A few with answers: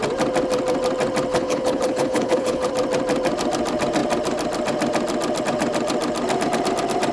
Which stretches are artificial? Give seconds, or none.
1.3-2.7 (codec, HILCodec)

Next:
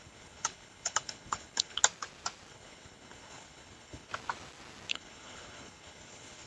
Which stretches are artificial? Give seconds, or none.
0.0-1.8 (codec, HILCodec); 2.5-4.1; 4.9-6.5

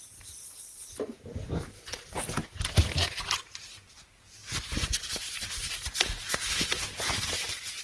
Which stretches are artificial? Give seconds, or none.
0.4-0.9 (codec, HILCodec)

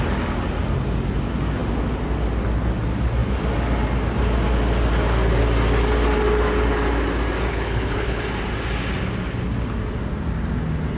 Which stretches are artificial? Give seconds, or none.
7.5-8.2 (codec, HILCodec)

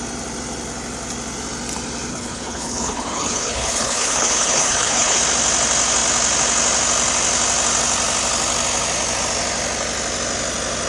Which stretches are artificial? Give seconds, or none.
2.1-5.2 (codec, HILCodec)

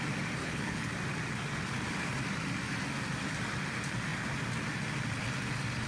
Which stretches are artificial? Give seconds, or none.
0.4-0.9 (codec, HILCodec)

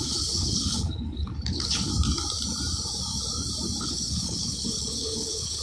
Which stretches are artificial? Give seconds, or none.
0.0-1.9 (codec, HILCodec); 3.8-5.6